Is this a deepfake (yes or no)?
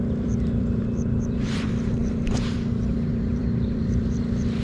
yes